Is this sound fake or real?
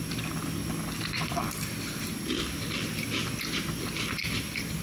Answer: real